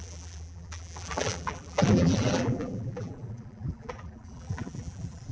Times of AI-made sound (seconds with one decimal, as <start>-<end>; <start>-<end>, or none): 0.0-5.3